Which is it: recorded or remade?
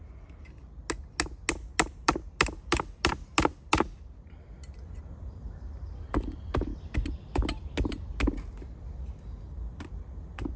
recorded